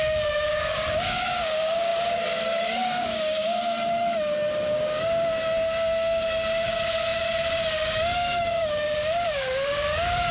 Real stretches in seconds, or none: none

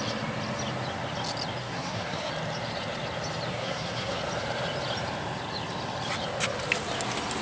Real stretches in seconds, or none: 0.0-1.6; 2.3-3.5; 4.2-7.4

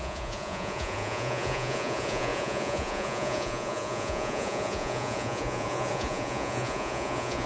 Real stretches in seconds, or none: none

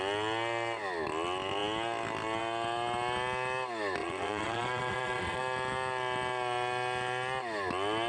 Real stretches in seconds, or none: 0.0-4.0; 5.4-8.1